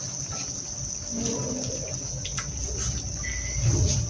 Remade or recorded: recorded